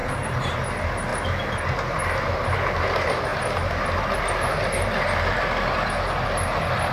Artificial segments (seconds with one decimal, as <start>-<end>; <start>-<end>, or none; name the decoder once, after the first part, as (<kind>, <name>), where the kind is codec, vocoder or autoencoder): 0.0-0.5 (vocoder, BigVGAN v2)